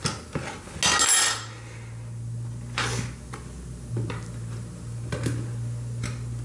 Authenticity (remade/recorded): recorded